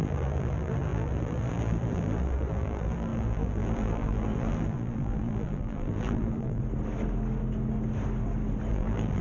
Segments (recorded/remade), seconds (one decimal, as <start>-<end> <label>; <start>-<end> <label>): 0.0-6.6 remade; 6.6-8.7 recorded; 8.7-9.2 remade